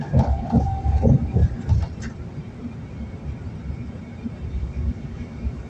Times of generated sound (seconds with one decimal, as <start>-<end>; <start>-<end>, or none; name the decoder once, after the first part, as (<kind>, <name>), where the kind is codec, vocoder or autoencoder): 0.0-1.4 (codec, DAC); 4.5-5.7